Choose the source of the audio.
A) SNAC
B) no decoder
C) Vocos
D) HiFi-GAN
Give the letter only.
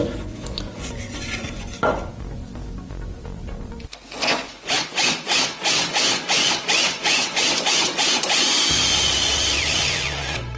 C